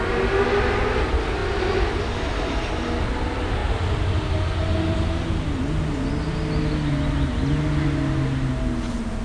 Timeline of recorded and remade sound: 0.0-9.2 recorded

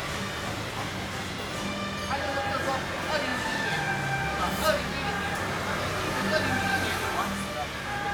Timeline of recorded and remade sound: 0.0-8.1 recorded

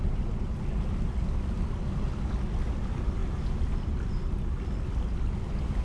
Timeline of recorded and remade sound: 0.0-5.8 recorded